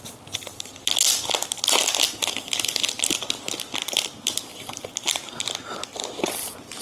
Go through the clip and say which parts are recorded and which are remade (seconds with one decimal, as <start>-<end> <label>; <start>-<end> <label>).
0.0-6.8 recorded